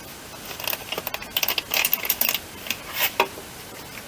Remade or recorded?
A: recorded